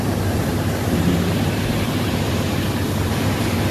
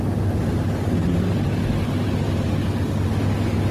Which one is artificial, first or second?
first